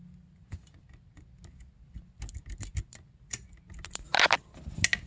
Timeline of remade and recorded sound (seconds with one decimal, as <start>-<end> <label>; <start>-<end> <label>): 0.0-5.1 recorded